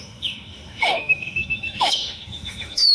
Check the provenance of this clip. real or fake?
fake